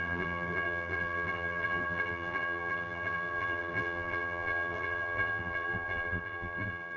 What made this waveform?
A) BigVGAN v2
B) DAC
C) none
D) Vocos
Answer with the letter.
A